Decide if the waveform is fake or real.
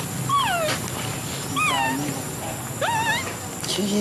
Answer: real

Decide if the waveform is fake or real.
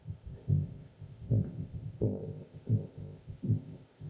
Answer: fake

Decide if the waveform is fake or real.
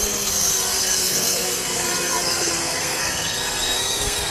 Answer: fake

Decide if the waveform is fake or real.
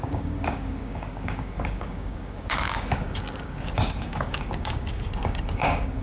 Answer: fake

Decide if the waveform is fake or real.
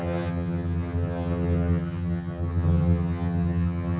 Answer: fake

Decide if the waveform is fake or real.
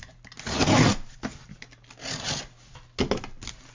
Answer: real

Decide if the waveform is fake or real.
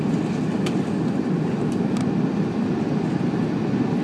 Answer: real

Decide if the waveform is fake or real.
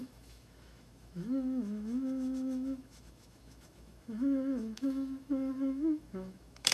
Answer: fake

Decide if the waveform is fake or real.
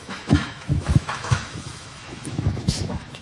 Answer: fake